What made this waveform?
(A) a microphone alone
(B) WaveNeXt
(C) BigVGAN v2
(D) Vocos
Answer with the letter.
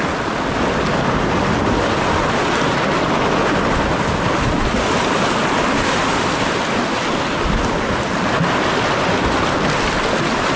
A